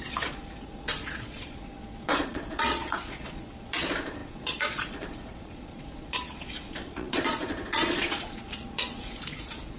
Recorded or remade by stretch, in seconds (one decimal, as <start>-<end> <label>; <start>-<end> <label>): 0.0-9.8 remade